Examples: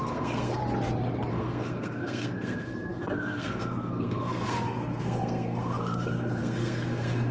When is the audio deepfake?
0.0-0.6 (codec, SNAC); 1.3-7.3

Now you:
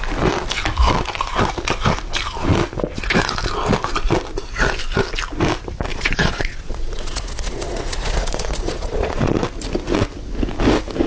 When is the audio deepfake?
5.9-9.4 (vocoder, Vocos)

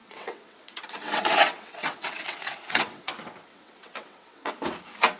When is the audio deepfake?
0.0-3.1 (vocoder, WaveNeXt); 3.5-4.5